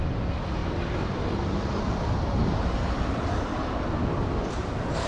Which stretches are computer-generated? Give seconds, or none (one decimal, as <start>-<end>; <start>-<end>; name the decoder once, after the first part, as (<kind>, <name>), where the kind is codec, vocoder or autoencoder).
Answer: 0.0-0.6 (vocoder, BigVGAN v2); 1.8-3.5; 4.5-5.1